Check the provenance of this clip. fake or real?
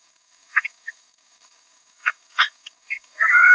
fake